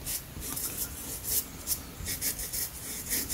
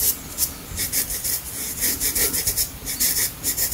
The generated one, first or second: second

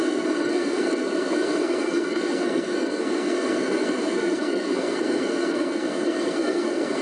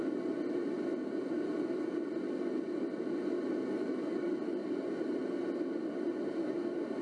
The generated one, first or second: first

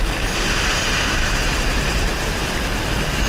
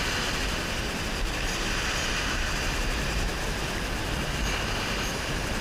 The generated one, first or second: second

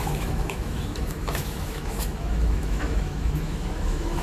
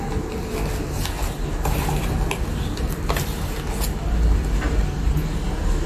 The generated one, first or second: first